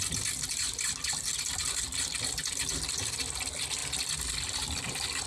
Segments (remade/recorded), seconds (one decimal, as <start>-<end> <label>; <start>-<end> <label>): 0.0-5.3 recorded